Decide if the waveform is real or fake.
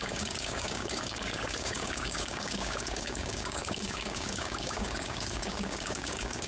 fake